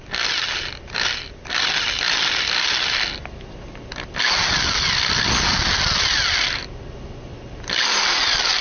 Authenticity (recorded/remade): recorded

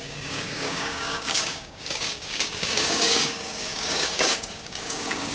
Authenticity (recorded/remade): remade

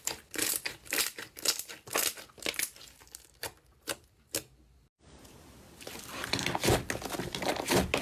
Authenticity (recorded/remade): recorded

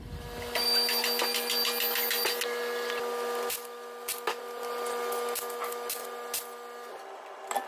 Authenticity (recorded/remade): recorded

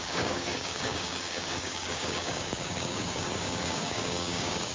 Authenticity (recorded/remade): remade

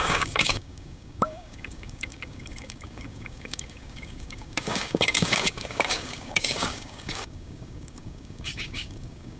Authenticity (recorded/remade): remade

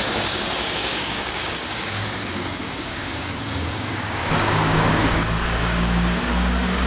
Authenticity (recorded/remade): remade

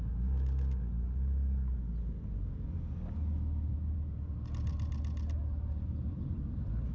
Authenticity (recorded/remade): recorded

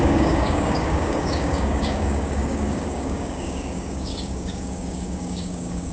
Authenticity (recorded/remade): remade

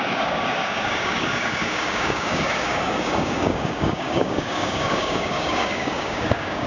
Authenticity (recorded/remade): remade